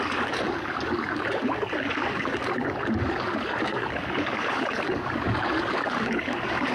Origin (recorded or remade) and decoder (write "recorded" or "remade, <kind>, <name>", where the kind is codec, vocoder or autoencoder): remade, codec, DAC